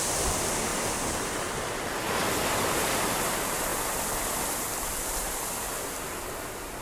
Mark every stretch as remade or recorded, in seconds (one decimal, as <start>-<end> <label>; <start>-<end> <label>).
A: 0.0-0.7 recorded; 0.7-3.1 remade; 3.1-6.8 recorded